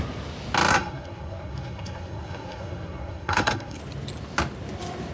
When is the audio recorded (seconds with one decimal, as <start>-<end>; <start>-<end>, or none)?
0.0-0.7; 3.8-5.1